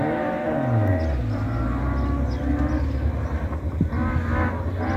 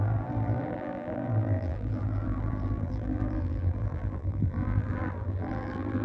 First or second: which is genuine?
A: first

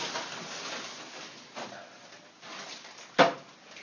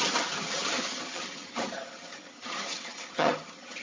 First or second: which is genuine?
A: first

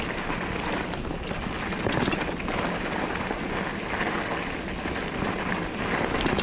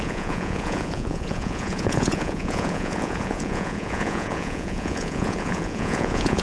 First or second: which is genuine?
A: first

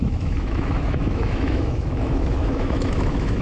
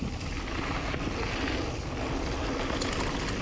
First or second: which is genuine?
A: second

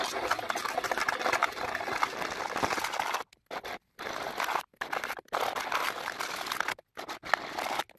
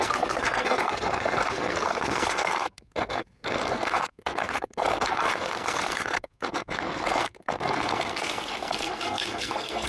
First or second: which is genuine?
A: first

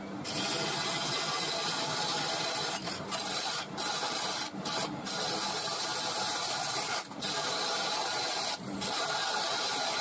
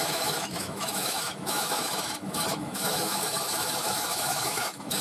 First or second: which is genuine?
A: first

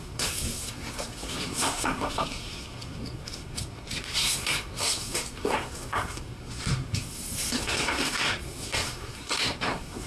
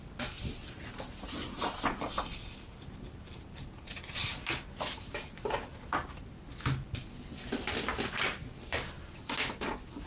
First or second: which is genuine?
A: second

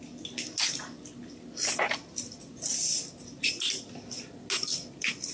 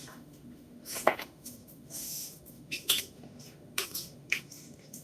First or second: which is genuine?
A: first